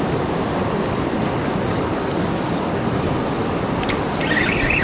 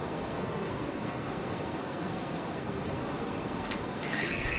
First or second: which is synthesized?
second